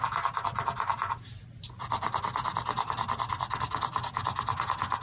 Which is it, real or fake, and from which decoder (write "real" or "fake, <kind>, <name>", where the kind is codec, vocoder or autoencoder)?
real